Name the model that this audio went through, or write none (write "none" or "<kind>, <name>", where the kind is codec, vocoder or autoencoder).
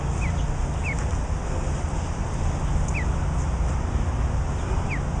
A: none